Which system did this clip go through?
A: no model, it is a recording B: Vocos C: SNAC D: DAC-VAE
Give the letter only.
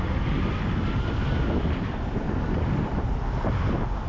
A